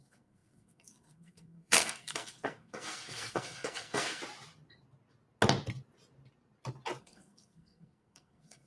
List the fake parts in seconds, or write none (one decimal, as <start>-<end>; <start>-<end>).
0.0-4.2; 7.0-8.7